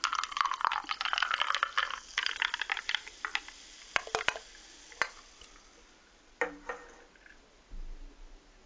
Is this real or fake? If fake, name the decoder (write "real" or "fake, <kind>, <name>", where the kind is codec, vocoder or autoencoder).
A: real